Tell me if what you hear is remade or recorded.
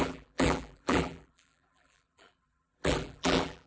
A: remade